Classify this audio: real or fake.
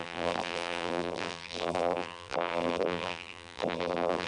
fake